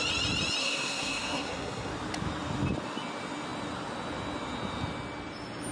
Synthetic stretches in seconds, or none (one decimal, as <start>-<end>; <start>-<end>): 0.6-1.9